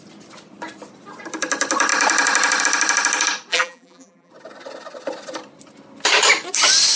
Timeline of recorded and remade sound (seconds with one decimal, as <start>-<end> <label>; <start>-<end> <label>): 0.0-3.5 recorded; 3.5-4.3 remade; 4.3-7.0 recorded